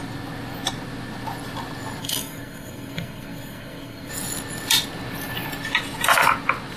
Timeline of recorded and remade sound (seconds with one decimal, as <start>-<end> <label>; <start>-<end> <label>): 0.0-2.0 recorded; 2.0-4.1 remade; 4.1-6.8 recorded